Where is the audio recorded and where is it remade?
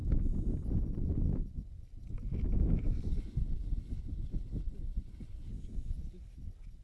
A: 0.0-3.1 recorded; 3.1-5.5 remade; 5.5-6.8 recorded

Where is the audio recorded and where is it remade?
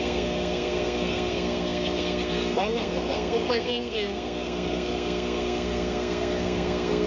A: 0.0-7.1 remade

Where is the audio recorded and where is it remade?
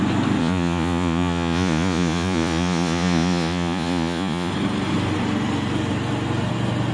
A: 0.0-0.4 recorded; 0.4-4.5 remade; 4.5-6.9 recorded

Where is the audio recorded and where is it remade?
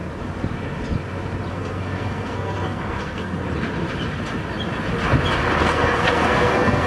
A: 0.0-1.5 recorded; 1.5-3.4 remade; 3.4-5.6 recorded; 5.6-6.9 remade